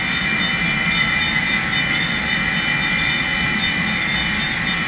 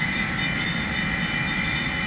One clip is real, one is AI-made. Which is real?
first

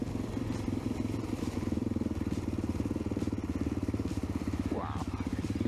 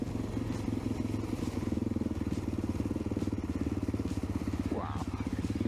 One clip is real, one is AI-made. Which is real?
second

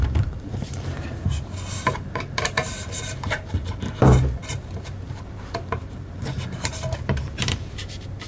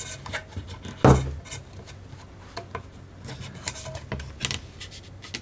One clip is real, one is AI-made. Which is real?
second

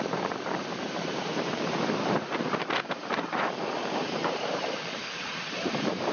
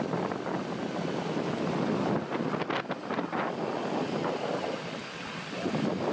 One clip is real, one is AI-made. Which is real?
second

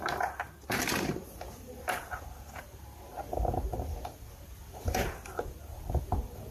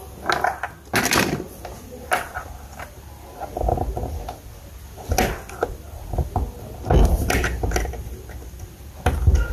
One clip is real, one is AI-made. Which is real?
second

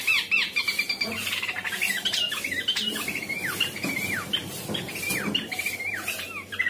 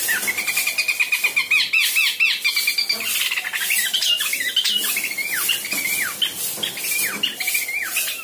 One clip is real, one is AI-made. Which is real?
second